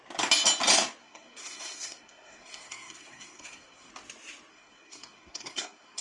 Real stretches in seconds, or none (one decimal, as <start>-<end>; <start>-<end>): 0.0-1.0; 3.9-4.5